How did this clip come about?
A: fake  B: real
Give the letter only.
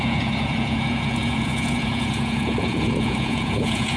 A